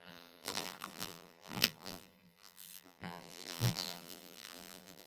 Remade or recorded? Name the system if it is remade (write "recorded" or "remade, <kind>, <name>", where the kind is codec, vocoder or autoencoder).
remade, vocoder, BigVGAN v2